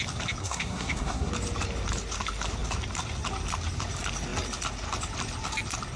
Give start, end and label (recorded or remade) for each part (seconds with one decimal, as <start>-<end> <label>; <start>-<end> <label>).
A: 0.0-0.4 recorded; 0.4-1.3 remade; 1.3-6.0 recorded